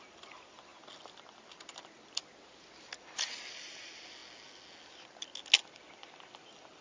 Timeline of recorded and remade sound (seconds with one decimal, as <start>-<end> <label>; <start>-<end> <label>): 0.0-6.8 recorded

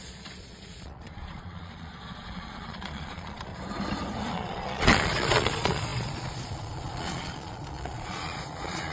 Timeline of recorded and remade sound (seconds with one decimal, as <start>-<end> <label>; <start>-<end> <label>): 0.0-3.5 remade; 3.5-4.3 recorded; 4.3-8.9 remade

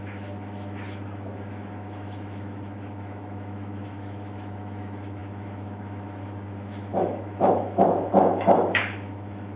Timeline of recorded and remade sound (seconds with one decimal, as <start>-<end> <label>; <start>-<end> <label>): 0.0-9.6 remade

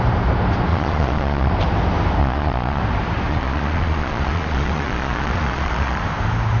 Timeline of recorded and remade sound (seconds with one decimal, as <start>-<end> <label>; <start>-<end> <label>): 0.0-0.7 recorded; 0.7-1.5 remade; 1.5-2.2 recorded; 2.2-2.8 remade; 2.8-3.3 recorded; 3.3-6.0 remade; 6.0-6.6 recorded

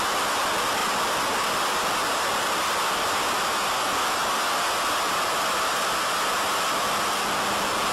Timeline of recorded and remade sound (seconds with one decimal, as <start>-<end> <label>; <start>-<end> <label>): 0.0-7.9 recorded

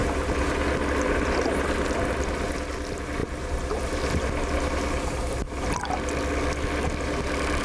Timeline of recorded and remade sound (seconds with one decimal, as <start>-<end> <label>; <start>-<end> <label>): 0.0-7.6 recorded

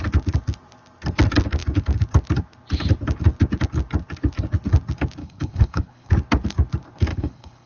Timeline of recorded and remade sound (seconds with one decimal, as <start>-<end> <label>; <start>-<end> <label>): 0.0-5.2 recorded; 5.2-6.1 remade; 6.1-7.1 recorded; 7.1-7.7 remade